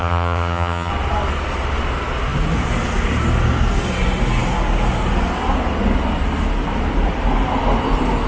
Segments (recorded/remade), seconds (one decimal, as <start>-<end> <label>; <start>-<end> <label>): 0.0-0.9 remade; 0.9-8.3 recorded